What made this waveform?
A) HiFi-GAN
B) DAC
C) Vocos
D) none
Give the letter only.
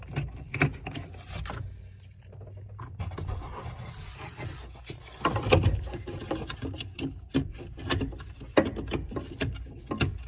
D